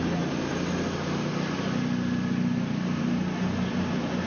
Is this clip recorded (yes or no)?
yes